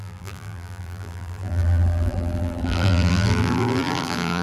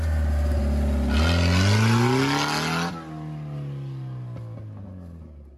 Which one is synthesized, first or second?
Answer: first